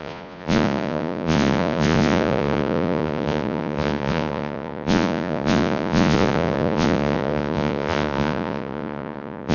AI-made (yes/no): yes